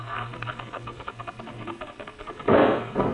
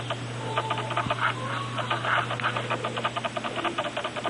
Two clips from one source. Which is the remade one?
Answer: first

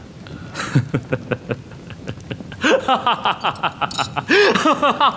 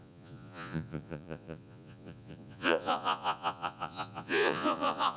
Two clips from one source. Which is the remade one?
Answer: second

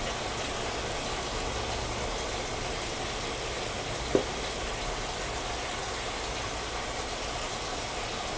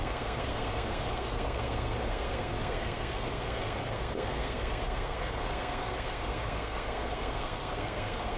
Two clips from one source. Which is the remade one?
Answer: second